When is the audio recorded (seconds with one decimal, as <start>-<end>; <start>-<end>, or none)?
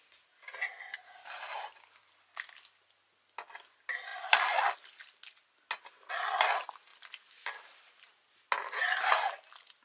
0.0-9.8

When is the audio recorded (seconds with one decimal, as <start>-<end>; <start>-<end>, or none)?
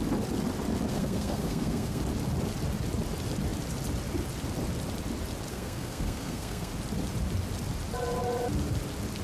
0.0-0.9; 2.0-5.5; 6.7-9.2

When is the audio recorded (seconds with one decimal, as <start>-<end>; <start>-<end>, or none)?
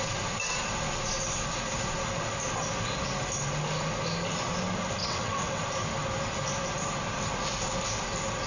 0.0-5.0; 5.6-8.5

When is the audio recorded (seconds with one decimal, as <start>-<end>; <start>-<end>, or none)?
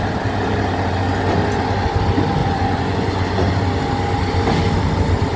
0.0-2.4; 3.5-5.4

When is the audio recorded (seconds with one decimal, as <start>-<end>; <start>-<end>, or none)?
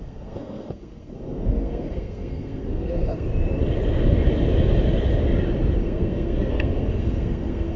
3.3-5.8